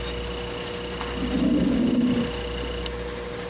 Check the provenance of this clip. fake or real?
real